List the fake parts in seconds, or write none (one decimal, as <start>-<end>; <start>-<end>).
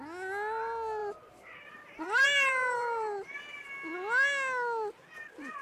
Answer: 1.0-3.7